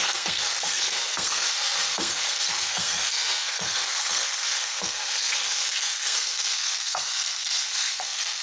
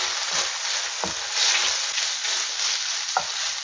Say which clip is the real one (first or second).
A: second